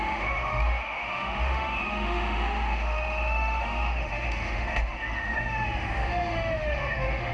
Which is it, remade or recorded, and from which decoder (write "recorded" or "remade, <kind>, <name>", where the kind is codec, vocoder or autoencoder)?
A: remade, autoencoder, DAC-VAE